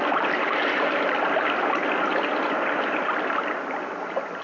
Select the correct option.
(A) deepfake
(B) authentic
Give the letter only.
B